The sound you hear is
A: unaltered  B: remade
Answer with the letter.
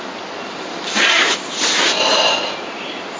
A